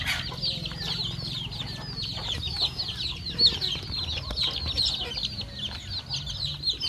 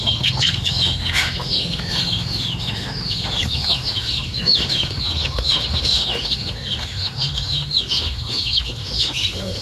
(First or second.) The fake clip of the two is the second